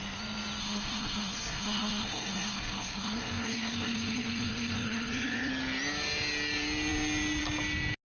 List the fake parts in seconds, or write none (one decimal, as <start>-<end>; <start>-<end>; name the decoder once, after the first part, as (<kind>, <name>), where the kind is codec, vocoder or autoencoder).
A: 0.6-5.5 (codec, SNAC)